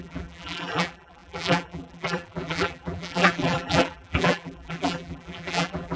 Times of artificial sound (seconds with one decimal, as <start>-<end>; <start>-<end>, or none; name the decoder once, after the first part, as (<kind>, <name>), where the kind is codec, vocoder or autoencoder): 0.0-6.0 (vocoder, BigVGAN v2)